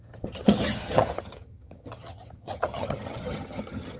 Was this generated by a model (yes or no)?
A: yes